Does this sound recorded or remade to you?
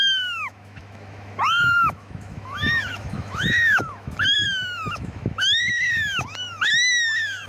remade